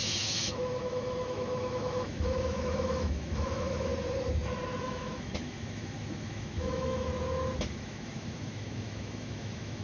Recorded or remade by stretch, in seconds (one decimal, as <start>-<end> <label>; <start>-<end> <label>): 0.0-3.9 remade; 3.9-4.8 recorded; 4.8-7.1 remade; 7.1-7.6 recorded; 7.6-9.8 remade